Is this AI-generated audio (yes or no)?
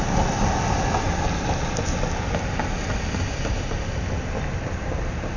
no